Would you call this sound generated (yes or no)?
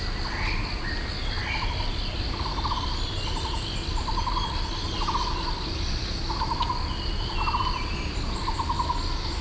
no